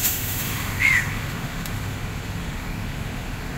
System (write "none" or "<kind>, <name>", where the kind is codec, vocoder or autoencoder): autoencoder, DAC-VAE